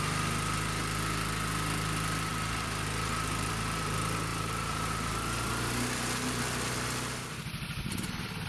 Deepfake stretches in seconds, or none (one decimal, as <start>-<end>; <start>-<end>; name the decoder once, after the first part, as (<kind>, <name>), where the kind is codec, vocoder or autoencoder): 2.3-3.5 (vocoder, BigVGAN v2); 4.3-5.1